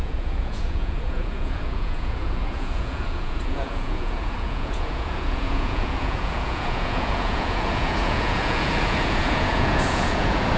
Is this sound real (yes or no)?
no